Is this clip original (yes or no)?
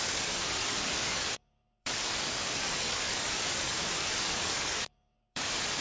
no